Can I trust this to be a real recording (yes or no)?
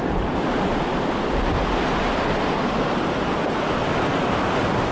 yes